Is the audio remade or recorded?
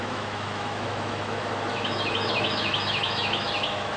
remade